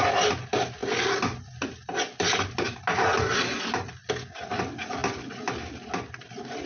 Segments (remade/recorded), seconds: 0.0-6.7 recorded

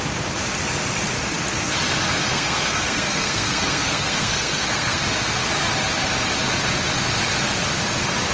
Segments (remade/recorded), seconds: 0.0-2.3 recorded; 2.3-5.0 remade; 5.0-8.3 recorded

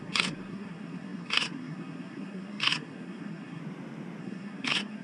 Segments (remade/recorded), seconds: 0.0-3.6 remade; 3.6-4.2 recorded; 4.2-5.0 remade

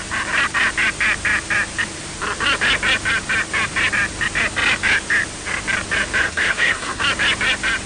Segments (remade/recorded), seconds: 0.0-6.2 recorded; 6.2-7.0 remade; 7.0-7.9 recorded

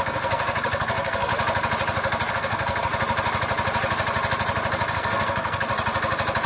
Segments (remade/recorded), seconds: 0.0-1.3 remade; 1.3-2.3 recorded; 2.3-2.9 remade; 2.9-4.9 recorded; 4.9-5.7 remade; 5.7-6.5 recorded

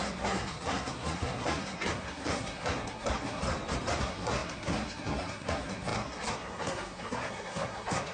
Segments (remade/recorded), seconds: 0.0-3.4 remade; 3.4-4.0 recorded; 4.0-8.1 remade

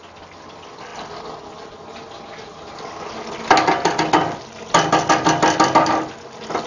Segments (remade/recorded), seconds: 0.0-6.7 recorded